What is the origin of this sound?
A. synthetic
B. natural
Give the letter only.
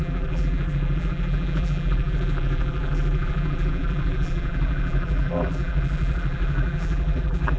A